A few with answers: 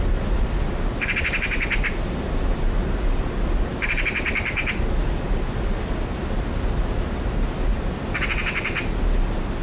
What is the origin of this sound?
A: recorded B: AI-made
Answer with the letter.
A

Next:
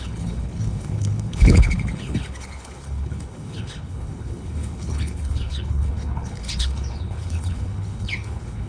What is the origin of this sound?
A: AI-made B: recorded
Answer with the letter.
A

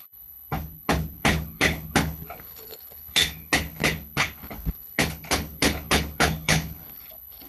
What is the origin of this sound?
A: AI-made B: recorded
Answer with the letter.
A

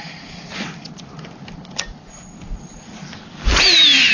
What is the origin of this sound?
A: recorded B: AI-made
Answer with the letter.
A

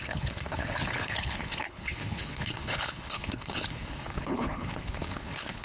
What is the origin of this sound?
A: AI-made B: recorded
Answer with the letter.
A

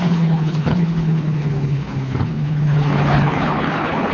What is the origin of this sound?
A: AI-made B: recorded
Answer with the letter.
A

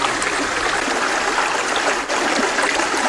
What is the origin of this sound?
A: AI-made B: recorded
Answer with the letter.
B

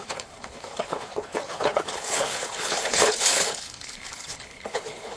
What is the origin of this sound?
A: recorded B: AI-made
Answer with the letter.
B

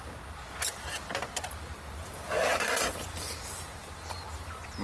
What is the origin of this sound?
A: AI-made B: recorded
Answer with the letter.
B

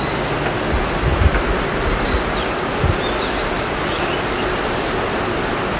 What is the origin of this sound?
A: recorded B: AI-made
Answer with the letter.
A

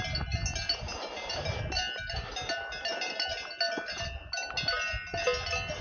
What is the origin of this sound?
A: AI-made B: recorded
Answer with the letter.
B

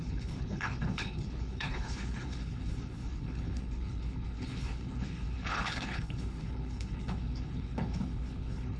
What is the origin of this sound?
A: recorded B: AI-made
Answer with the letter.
B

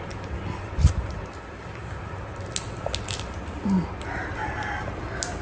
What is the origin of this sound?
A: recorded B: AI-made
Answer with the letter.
A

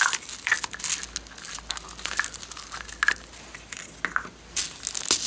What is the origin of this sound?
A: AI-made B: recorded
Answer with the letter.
B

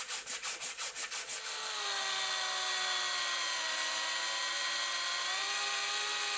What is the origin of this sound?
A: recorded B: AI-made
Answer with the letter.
A